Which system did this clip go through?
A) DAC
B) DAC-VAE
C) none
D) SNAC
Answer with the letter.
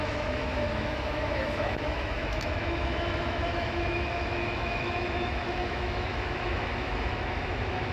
B